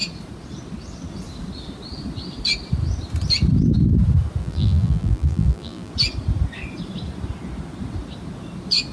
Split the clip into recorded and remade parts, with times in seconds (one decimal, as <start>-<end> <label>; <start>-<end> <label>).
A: 0.0-4.4 recorded; 4.4-5.9 remade; 5.9-8.9 recorded